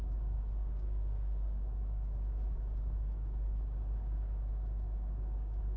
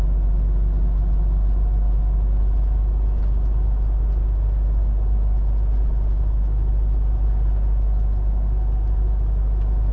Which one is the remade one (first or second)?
first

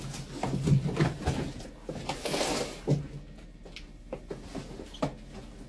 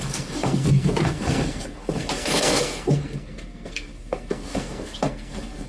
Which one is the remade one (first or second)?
second